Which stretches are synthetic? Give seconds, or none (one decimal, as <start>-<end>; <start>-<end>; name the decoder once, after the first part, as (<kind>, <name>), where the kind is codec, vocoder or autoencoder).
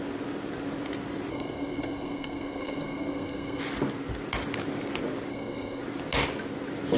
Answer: 1.3-3.6 (codec, SNAC); 5.3-5.8